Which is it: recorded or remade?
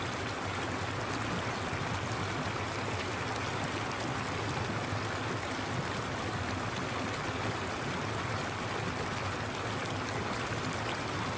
recorded